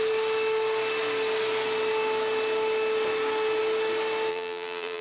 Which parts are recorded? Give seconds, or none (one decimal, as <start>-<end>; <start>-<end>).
0.0-4.3